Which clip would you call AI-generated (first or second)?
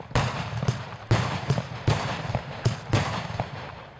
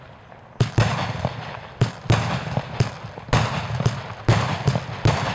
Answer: first